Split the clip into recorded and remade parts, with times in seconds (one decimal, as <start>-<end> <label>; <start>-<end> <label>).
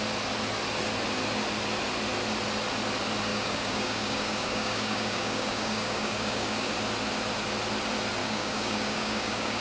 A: 0.0-3.3 recorded; 3.3-6.7 remade; 6.7-8.2 recorded; 8.2-9.6 remade